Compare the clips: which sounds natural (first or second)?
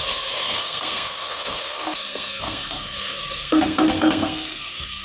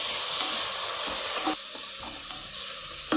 second